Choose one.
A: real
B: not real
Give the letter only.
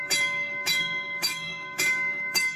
B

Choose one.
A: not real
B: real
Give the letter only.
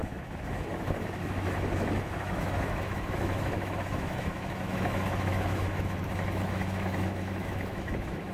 A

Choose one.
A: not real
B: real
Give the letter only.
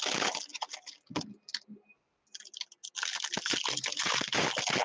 B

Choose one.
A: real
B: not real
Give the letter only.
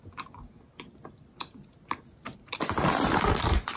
A